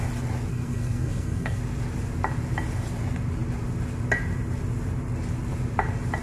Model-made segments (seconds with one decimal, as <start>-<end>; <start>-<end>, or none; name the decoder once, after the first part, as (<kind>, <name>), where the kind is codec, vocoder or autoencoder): 0.5-1.6 (codec, SNAC)